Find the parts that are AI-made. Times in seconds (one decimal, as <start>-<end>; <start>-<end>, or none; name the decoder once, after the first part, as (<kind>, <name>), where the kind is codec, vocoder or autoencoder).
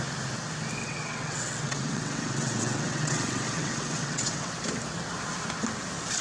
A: 0.8-4.5 (vocoder, WaveNeXt)